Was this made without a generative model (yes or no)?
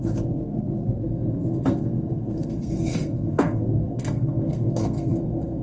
no